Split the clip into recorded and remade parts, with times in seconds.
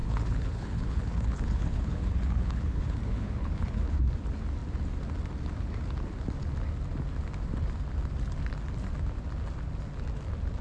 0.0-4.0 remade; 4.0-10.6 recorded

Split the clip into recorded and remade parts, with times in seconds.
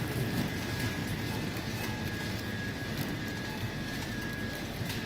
0.0-5.1 recorded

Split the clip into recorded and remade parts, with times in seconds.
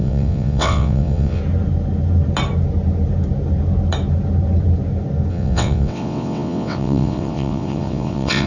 0.0-1.4 remade; 1.4-5.3 recorded; 5.3-8.5 remade